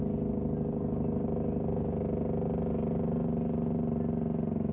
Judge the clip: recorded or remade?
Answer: recorded